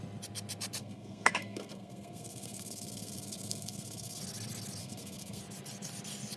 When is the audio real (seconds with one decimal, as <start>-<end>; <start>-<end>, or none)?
0.0-0.8; 4.2-4.8; 5.4-6.4